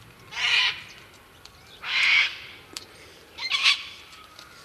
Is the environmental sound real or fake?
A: fake